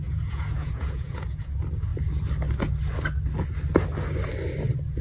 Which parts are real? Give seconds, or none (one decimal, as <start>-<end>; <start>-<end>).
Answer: 1.5-5.0